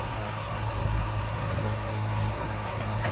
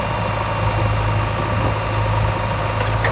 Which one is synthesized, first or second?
first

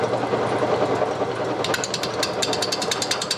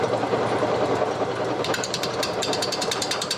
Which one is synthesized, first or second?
second